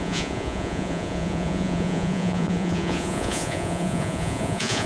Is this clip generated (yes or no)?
yes